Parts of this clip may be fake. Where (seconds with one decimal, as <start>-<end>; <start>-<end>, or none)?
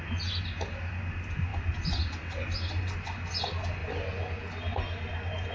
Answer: none